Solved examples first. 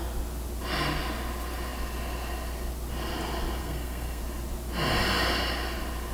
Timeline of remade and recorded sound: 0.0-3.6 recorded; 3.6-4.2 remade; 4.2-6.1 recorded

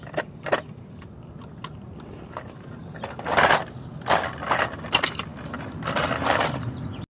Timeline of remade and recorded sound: 0.0-7.2 recorded

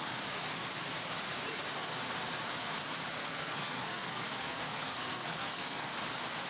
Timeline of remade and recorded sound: 0.0-3.2 recorded; 3.2-5.9 remade; 5.9-6.5 recorded

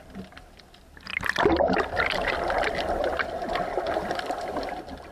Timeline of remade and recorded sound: 0.0-5.1 recorded

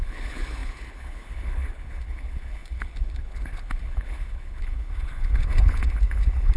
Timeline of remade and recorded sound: 0.0-6.6 remade